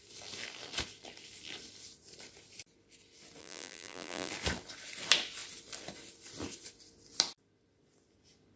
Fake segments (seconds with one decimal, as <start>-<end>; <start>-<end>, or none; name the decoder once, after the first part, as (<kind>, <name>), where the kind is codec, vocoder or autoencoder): 3.4-4.3 (vocoder, BigVGAN v2)